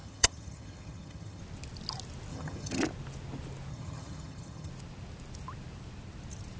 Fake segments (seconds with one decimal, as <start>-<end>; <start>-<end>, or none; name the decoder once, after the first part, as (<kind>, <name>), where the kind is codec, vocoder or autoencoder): 0.0-1.4 (vocoder, HiFi-GAN); 2.3-2.8; 3.7-4.7